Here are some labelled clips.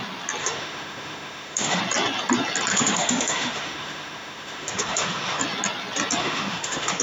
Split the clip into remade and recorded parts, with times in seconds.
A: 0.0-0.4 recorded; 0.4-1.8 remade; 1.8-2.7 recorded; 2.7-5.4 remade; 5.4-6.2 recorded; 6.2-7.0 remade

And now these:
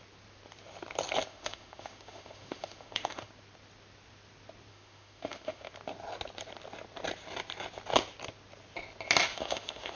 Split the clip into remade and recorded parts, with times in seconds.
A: 0.0-1.3 recorded; 1.3-3.3 remade; 3.3-4.7 recorded; 4.7-5.7 remade; 5.7-9.3 recorded; 9.3-10.0 remade

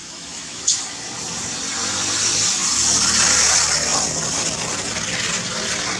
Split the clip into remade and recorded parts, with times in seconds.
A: 0.0-0.8 remade; 0.8-6.0 recorded